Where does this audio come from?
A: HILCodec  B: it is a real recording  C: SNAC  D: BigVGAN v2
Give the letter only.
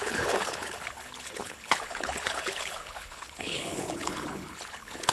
A